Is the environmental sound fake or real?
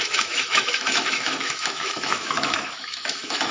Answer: fake